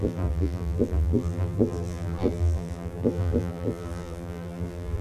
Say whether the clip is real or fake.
fake